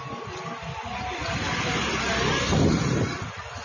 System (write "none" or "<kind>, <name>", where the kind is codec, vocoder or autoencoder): none